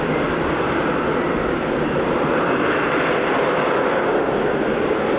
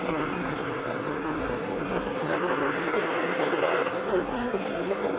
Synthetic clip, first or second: second